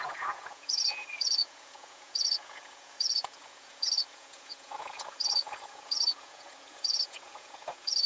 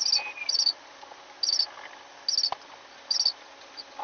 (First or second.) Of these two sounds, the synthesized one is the first